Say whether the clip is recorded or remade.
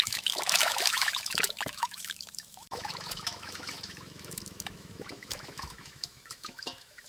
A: remade